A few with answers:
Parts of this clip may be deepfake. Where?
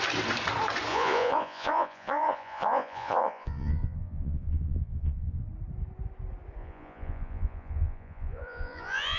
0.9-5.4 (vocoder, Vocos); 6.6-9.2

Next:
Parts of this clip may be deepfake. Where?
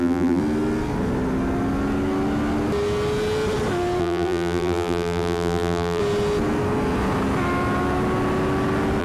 0.0-0.4 (vocoder, BigVGAN v2); 4.0-6.0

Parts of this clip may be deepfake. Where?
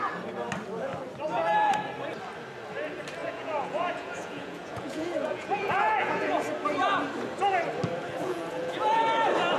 3.2-6.5 (vocoder, Vocos); 8.2-9.0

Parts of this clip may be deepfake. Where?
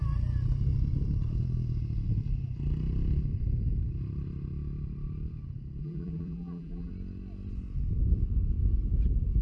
5.8-6.9 (vocoder, BigVGAN v2)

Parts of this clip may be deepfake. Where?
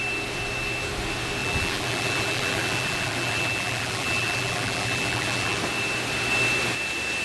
1.4-5.6 (vocoder, BigVGAN v2)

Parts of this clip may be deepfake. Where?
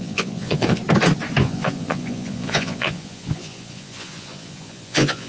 0.0-0.8 (vocoder, Vocos); 1.4-5.3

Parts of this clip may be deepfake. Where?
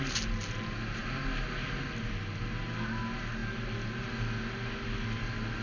none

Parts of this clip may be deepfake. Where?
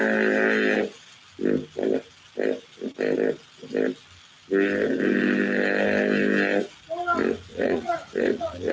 7.5-8.7 (vocoder, Vocos)